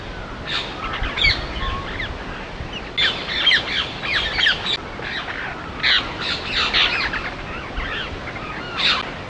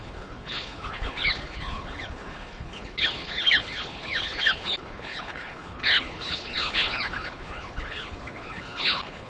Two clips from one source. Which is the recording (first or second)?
first